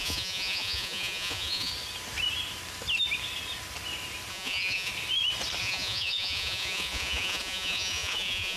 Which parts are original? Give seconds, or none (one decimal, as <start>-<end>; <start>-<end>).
1.7-4.3; 4.9-5.6